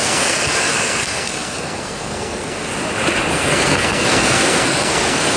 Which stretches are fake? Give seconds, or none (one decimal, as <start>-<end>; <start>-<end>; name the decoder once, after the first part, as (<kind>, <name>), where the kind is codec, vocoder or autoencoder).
0.0-2.7 (codec, SNAC); 3.3-5.4